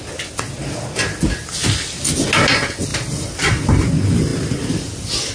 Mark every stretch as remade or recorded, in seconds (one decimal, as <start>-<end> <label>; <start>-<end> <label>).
0.0-2.9 recorded; 2.9-3.6 remade; 3.6-5.3 recorded